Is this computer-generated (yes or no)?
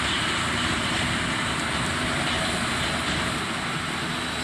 yes